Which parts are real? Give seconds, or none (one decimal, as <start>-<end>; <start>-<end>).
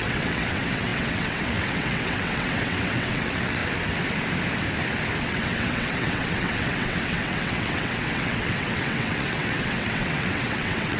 3.6-5.2